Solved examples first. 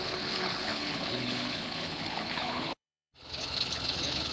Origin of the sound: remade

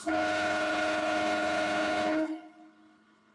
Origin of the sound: remade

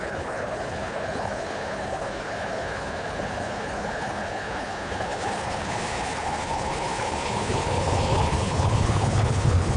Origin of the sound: remade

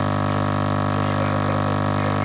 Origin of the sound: recorded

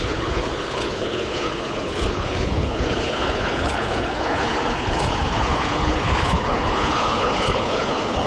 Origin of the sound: remade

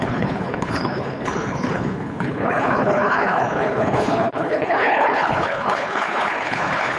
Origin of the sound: remade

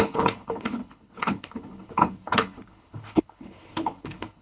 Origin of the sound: remade